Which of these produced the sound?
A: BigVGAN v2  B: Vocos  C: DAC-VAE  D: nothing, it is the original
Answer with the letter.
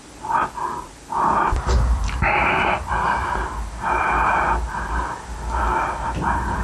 D